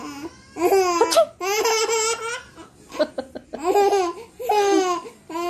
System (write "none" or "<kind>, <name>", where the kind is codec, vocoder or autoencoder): none